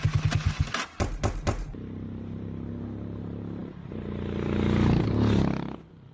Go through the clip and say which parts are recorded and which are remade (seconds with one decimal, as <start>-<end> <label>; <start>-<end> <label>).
0.0-6.1 recorded